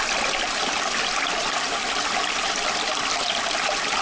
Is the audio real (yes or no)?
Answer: yes